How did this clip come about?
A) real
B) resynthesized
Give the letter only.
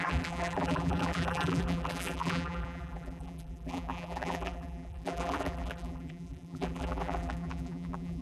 B